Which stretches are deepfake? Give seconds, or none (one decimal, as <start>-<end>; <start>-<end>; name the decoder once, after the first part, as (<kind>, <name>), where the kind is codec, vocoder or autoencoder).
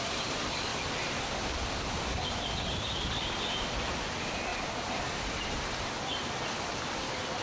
0.0-0.7 (vocoder, BigVGAN v2); 2.0-4.5